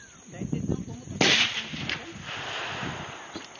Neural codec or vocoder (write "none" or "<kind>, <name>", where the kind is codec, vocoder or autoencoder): none